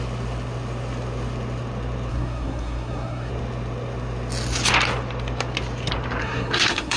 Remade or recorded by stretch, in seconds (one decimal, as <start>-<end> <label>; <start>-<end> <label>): 0.0-2.1 recorded; 2.1-3.3 remade; 3.3-6.2 recorded; 6.2-7.0 remade